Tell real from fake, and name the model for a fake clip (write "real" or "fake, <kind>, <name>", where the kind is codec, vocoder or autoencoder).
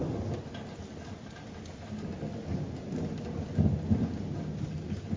real